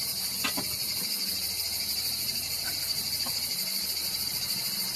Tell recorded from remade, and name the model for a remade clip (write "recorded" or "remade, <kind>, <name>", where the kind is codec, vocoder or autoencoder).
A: remade, vocoder, BigVGAN v2